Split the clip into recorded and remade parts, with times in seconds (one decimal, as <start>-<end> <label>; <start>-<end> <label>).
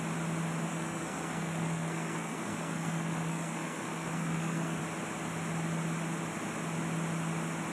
0.0-0.7 recorded; 0.7-4.8 remade; 4.8-7.7 recorded